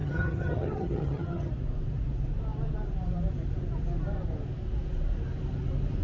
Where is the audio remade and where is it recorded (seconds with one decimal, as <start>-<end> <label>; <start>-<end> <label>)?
0.0-1.5 remade; 1.5-6.0 recorded